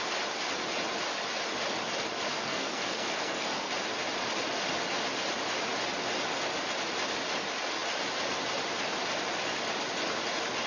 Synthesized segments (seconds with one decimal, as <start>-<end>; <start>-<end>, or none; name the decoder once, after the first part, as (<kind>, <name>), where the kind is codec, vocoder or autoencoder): 2.3-3.7 (codec, SNAC)